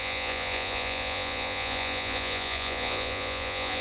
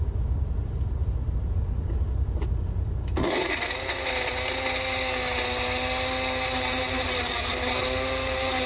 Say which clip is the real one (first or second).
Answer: second